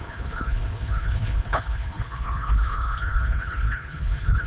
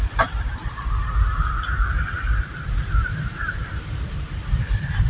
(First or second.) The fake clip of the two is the first